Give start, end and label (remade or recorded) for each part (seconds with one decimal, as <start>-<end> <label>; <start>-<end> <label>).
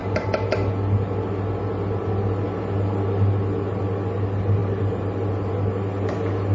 0.0-6.5 recorded